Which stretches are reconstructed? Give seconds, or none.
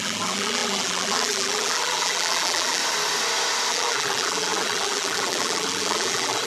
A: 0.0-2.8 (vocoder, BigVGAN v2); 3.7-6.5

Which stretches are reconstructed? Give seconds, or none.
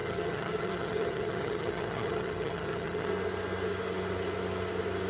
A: 0.0-3.1 (vocoder, HiFi-GAN)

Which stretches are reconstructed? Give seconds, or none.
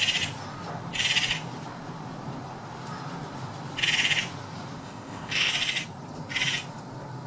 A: 4.8-5.5 (codec, ZipCodec)